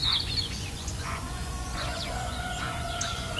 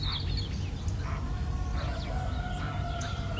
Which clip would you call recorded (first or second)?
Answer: second